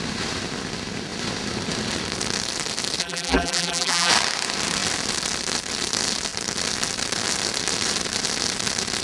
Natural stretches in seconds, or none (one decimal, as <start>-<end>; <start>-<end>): 0.0-3.0; 4.1-9.0